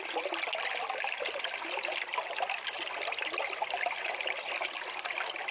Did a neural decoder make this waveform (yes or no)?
no